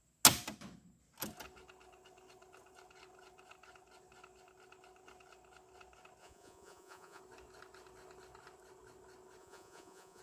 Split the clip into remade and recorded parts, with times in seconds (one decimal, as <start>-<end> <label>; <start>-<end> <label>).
0.0-6.2 recorded; 6.2-7.2 remade; 7.2-9.4 recorded; 9.4-10.2 remade